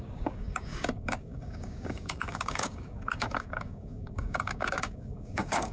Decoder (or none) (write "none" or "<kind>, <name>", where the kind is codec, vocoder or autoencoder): codec, DAC